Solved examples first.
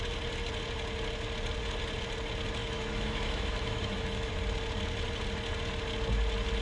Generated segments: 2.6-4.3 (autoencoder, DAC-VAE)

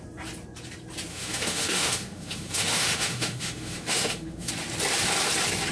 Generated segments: 1.1-4.5 (autoencoder, DAC-VAE)